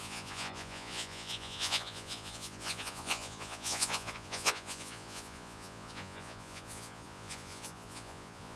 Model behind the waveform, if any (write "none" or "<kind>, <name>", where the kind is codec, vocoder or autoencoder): vocoder, Vocos